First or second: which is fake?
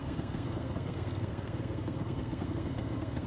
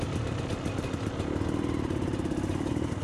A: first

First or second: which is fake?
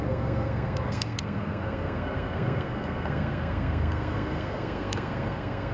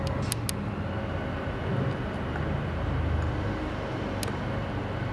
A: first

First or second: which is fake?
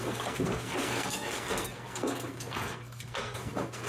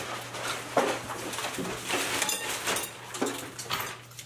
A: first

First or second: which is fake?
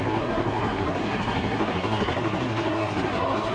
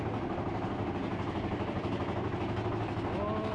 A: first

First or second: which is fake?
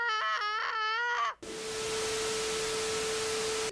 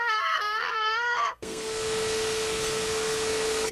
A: second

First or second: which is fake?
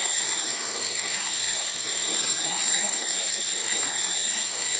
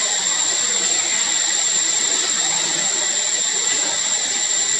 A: first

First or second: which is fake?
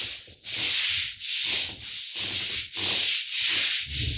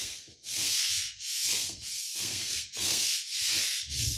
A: second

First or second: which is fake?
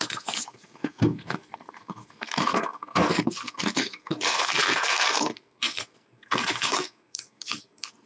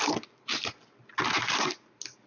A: first